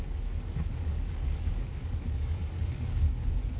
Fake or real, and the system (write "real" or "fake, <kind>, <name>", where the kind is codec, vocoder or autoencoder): fake, codec, DAC